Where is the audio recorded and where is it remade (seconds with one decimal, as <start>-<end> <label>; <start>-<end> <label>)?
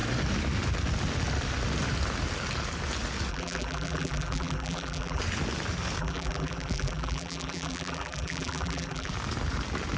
0.0-3.3 recorded; 3.3-5.2 remade; 5.2-6.0 recorded; 6.0-9.1 remade; 9.1-10.0 recorded